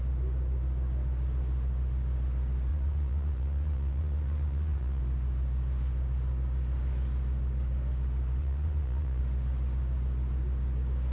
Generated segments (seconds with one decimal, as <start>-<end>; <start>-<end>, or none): 2.7-5.0; 8.4-9.2